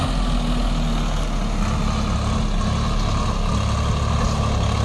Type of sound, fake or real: real